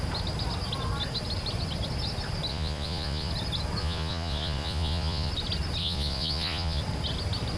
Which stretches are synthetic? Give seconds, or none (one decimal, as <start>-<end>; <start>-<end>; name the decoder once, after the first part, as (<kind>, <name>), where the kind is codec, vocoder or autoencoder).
2.5-3.3 (vocoder, Vocos); 3.8-5.3; 5.8-6.8